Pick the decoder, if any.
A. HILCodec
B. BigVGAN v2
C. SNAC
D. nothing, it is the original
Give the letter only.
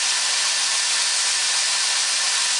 D